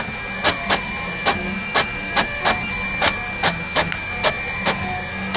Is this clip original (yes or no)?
yes